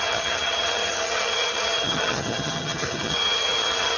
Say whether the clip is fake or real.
fake